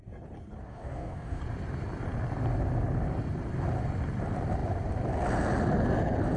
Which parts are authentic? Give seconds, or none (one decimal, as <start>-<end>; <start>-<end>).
0.0-0.7; 1.4-6.4